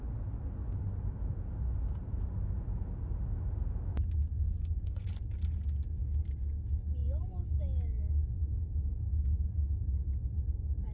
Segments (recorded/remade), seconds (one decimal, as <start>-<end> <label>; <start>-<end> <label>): 0.0-4.3 recorded; 4.3-5.2 remade; 5.2-10.9 recorded